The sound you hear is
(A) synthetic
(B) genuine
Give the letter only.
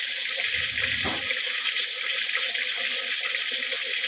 B